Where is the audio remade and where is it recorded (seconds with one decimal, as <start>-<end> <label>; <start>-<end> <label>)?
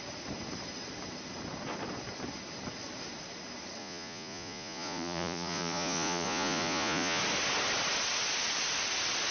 0.0-3.8 recorded; 3.8-7.2 remade; 7.2-9.3 recorded